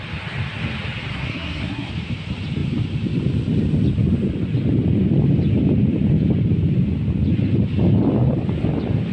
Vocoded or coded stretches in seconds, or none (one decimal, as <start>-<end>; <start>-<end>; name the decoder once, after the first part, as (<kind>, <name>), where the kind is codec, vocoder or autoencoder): 1.1-1.9 (codec, SNAC)